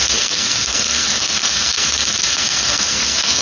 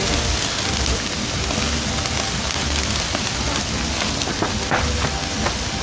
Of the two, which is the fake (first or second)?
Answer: first